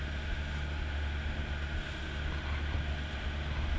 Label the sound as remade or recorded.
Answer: recorded